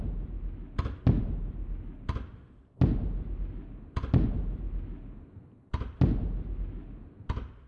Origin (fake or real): real